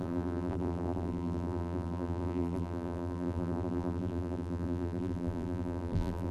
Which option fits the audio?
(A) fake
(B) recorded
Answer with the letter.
A